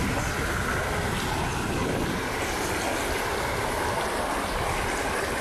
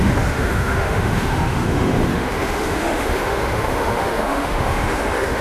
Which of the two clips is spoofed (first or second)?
second